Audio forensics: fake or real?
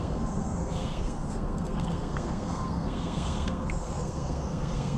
fake